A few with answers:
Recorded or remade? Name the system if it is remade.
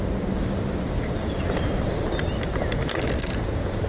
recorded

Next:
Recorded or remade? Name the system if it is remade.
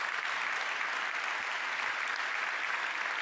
recorded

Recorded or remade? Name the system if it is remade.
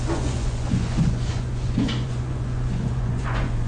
remade, vocoder, Vocos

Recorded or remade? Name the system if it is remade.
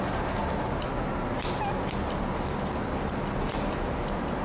recorded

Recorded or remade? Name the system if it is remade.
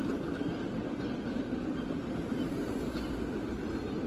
recorded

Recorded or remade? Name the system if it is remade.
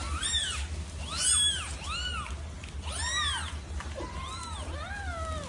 recorded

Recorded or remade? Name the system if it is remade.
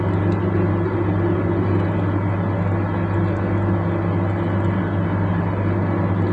recorded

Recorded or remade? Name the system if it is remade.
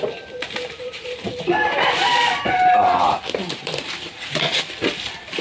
remade, vocoder, BigVGAN v2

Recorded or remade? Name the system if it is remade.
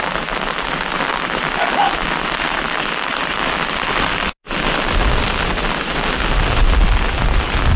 recorded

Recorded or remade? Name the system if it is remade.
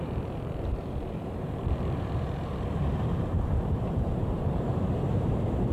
remade, vocoder, BigVGAN v2